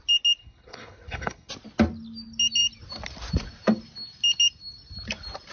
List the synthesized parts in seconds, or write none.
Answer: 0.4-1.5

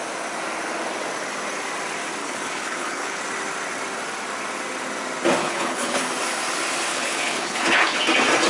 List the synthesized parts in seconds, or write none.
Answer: 2.2-3.2; 5.4-6.0; 6.9-8.0

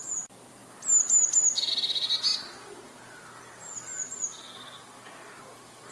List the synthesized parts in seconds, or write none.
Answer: none